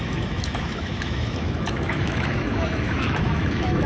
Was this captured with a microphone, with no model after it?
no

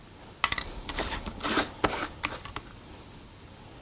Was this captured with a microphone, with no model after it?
yes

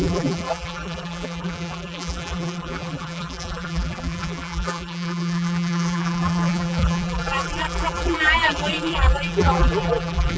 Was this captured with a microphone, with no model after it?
no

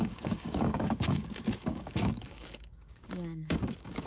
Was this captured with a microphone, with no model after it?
no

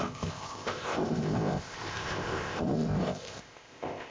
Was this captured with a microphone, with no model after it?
no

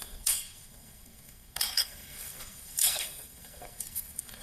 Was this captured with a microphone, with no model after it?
no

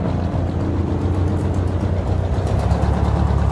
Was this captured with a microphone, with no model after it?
yes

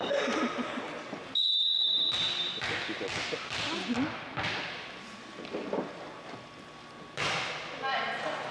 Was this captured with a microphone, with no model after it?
yes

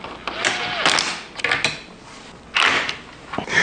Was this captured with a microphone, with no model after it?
yes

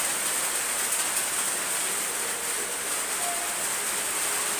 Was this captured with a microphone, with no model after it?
yes